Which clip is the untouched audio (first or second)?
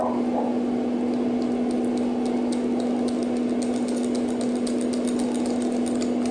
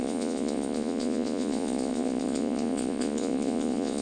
first